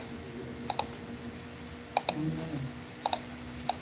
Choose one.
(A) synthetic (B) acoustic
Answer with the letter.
B